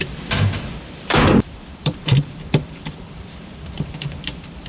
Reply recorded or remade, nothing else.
remade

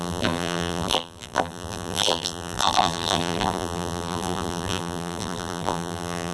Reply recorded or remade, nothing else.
remade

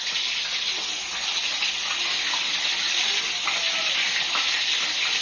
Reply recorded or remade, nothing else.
recorded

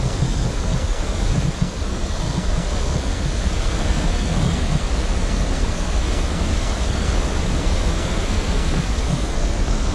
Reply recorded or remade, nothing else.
remade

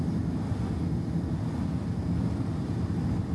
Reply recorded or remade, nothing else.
recorded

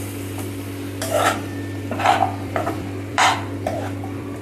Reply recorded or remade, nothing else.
remade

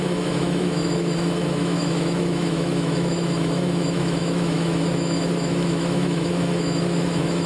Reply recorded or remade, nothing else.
remade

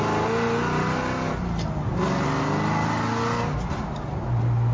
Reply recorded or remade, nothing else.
recorded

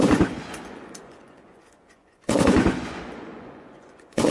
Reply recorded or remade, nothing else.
remade